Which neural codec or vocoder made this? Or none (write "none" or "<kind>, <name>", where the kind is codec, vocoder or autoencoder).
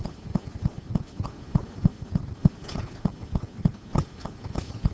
none